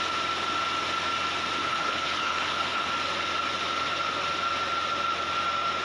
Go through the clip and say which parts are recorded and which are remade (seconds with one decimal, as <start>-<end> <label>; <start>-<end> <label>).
0.0-1.6 recorded; 1.6-2.9 remade; 2.9-5.8 recorded